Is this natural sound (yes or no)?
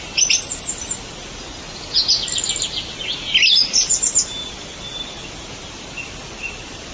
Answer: yes